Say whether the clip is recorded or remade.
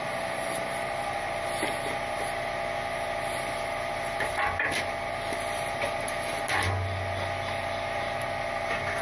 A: recorded